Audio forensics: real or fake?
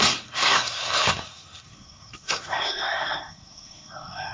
fake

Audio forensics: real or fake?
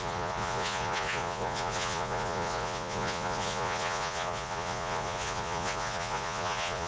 fake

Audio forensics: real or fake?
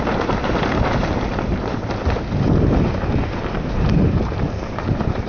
fake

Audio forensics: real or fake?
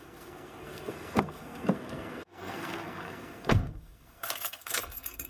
fake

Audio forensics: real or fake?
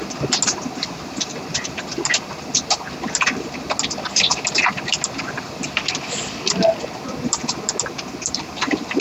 real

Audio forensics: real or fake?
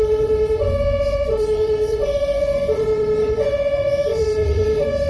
fake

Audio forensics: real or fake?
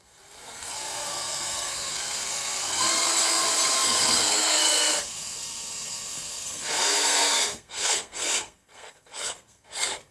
fake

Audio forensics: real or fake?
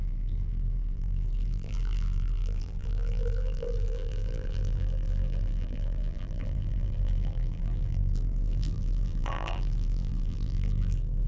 fake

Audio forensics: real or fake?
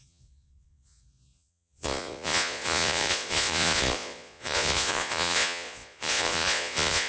fake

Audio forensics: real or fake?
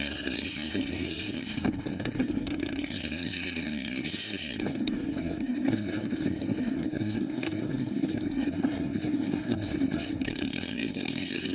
fake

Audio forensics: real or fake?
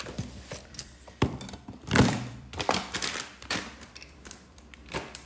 fake